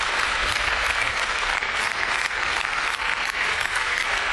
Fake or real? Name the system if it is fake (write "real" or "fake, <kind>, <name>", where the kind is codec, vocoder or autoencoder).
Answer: fake, codec, SNAC